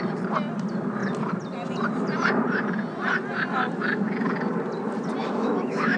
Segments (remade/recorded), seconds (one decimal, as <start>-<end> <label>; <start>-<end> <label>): 0.0-5.2 recorded; 5.2-6.0 remade